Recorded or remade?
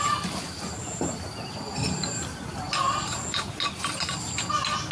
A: recorded